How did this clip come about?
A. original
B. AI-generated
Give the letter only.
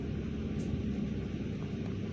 A